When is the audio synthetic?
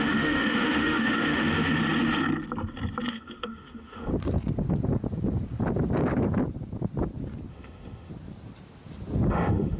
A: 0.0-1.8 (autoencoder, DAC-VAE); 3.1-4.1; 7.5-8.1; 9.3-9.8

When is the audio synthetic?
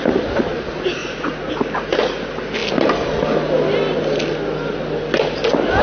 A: 1.0-1.5 (vocoder, BigVGAN v2)